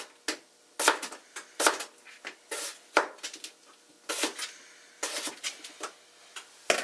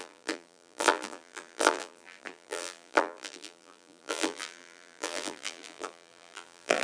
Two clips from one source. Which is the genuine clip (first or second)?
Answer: first